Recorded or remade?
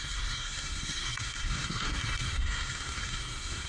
remade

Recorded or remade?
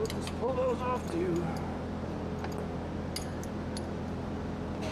recorded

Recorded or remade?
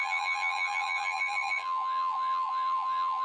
remade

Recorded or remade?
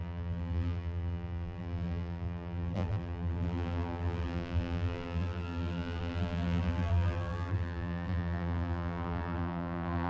remade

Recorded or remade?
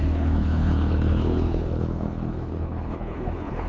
remade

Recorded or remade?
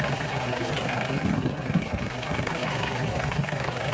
remade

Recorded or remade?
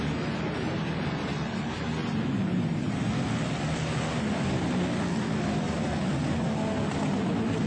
recorded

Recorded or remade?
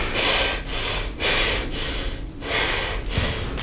recorded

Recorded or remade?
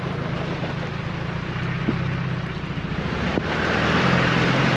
recorded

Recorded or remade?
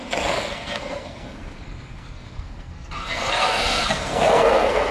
remade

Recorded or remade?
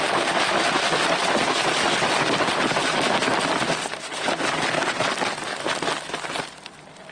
recorded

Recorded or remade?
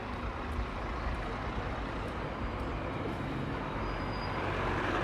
recorded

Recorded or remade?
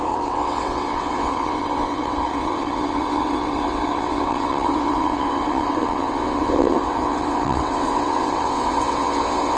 remade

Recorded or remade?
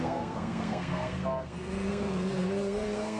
remade